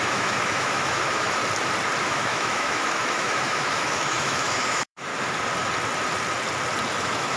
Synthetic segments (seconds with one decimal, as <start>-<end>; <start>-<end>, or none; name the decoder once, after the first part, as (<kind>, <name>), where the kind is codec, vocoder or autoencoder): 0.0-1.4 (autoencoder, DAC-VAE); 2.0-5.1; 7.0-7.4